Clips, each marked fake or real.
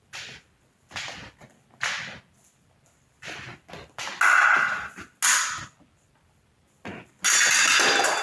real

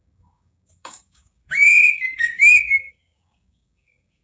fake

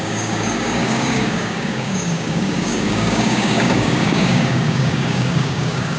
fake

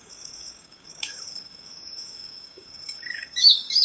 fake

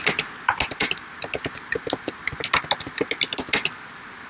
real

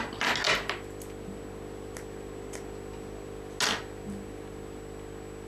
real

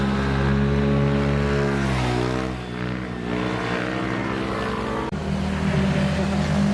real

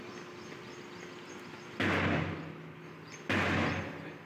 real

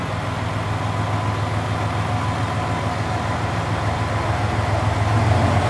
real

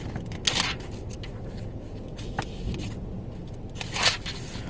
real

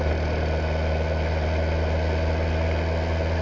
real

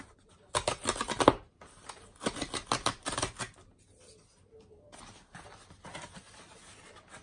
real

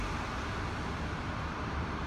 real